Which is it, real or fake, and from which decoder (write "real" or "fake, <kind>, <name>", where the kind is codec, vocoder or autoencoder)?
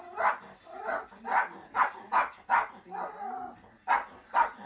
real